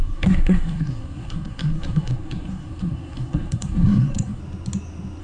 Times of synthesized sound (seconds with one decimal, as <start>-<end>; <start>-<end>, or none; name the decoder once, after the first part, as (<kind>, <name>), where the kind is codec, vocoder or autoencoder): 0.0-4.4 (codec, SNAC)